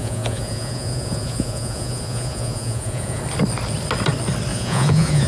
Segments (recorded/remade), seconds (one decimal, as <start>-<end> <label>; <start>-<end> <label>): 0.0-3.2 remade; 3.2-4.5 recorded; 4.5-5.3 remade